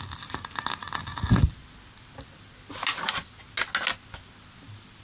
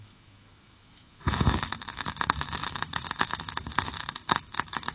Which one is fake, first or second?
second